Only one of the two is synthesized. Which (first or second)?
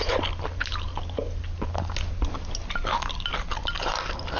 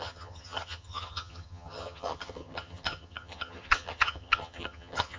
second